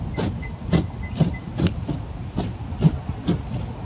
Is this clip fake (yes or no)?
no